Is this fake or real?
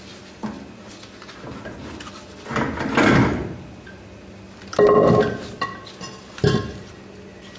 real